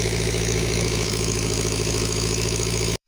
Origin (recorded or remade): remade